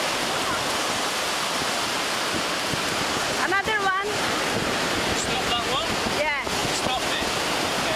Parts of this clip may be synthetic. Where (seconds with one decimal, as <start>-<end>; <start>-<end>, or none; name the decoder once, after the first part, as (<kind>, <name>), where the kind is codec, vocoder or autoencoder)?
none